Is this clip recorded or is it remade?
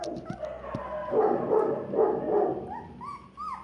recorded